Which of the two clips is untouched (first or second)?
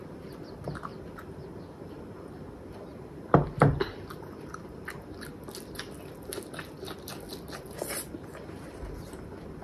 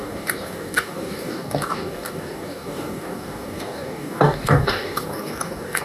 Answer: first